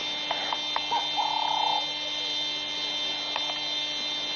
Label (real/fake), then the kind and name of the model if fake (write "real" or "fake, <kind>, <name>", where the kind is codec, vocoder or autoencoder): real